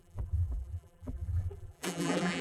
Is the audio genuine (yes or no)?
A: no